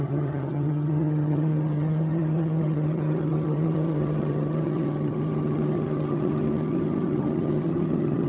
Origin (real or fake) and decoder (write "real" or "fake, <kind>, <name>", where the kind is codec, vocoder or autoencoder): fake, vocoder, HiFi-GAN